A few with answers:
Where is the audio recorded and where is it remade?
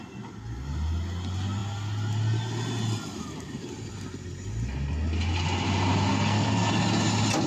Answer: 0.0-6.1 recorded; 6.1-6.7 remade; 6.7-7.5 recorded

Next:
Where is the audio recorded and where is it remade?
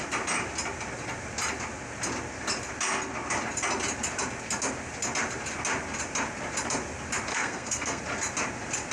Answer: 0.0-7.3 recorded; 7.3-8.0 remade; 8.0-8.9 recorded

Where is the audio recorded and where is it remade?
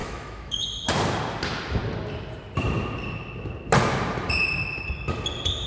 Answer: 0.0-0.6 remade; 0.6-5.7 recorded